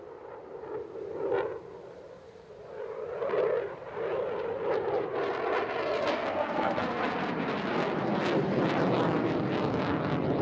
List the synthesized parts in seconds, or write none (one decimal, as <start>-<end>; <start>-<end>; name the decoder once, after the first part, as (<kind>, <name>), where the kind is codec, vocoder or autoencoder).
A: 6.1-7.0 (codec, SNAC)